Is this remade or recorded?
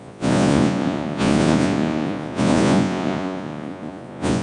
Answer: remade